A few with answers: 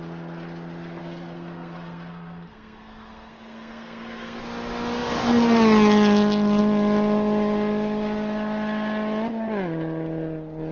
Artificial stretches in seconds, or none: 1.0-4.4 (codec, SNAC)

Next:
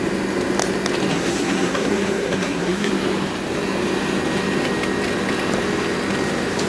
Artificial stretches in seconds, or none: 1.1-2.9 (codec, SNAC)

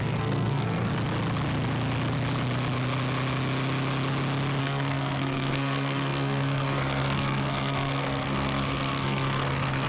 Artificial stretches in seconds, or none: 0.0-0.9 (codec, SNAC); 4.6-9.9

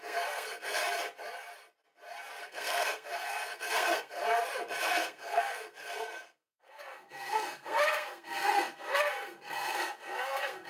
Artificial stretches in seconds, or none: 0.0-0.8 (codec, SNAC); 2.4-4.2; 4.8-10.7

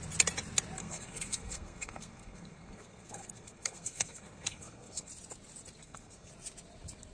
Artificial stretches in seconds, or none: 0.8-5.1 (codec, SNAC); 5.8-6.3